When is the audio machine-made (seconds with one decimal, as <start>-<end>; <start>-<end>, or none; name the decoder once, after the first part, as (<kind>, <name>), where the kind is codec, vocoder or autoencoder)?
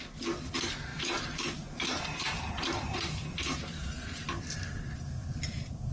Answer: 0.9-4.4 (vocoder, BigVGAN v2); 5.2-5.9